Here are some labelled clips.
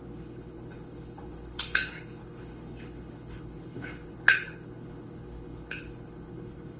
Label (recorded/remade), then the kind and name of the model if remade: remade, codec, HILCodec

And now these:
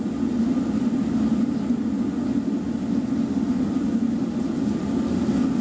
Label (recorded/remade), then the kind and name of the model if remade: recorded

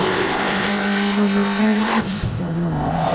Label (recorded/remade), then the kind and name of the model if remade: remade, codec, ZipCodec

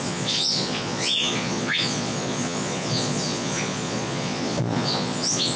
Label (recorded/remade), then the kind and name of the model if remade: remade, vocoder, Vocos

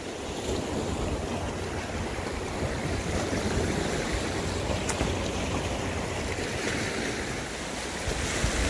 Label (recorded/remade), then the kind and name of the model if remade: recorded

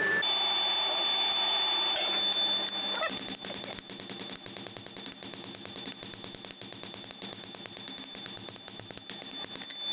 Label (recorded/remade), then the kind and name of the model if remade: recorded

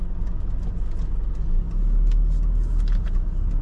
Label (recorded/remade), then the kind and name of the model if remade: recorded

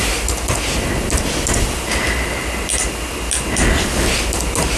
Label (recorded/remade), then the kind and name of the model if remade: recorded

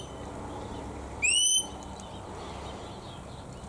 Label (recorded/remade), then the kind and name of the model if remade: recorded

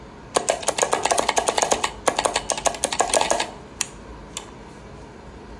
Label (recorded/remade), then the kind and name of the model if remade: recorded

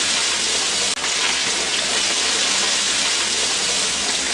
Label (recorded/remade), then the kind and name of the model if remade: recorded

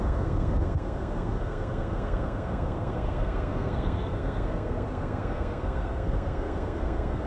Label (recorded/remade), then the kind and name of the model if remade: remade, codec, SNAC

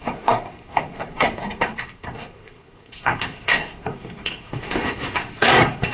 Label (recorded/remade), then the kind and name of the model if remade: remade, codec, SNAC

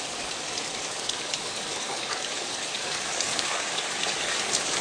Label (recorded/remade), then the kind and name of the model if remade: remade, codec, DAC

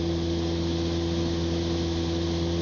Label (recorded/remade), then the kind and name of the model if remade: recorded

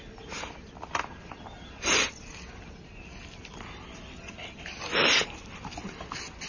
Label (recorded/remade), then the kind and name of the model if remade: recorded